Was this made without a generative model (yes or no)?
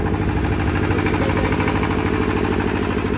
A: yes